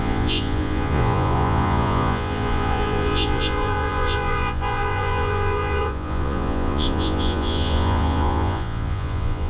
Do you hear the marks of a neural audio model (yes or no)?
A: yes